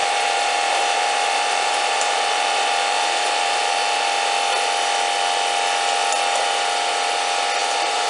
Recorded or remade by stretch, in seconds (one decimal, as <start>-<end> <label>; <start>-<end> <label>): 0.0-4.0 remade; 4.0-7.6 recorded; 7.6-8.1 remade